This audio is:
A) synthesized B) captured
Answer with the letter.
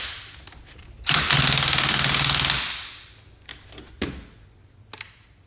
B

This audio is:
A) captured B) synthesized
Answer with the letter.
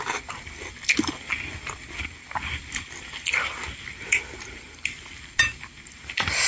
A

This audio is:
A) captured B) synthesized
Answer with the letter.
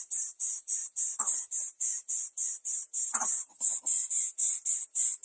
B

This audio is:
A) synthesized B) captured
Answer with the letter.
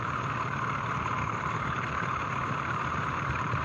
A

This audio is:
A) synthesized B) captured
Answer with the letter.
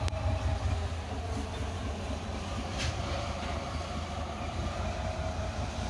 B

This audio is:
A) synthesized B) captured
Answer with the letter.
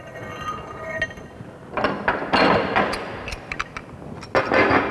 B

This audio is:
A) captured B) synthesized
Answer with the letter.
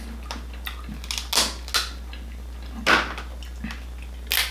A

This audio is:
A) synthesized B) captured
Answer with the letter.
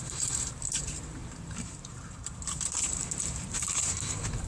A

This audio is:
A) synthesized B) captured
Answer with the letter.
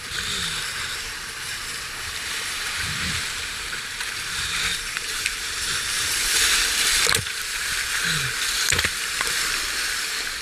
A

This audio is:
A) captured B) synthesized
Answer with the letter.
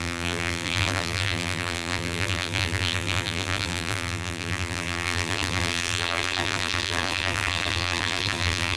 B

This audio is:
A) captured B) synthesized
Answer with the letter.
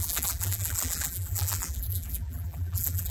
B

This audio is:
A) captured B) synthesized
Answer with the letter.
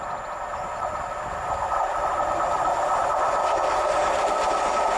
A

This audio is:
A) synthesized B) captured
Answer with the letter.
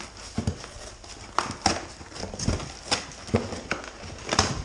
B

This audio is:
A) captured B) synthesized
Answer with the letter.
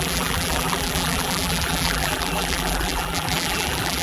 B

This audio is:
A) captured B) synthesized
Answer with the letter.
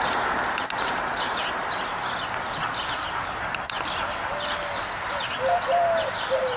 A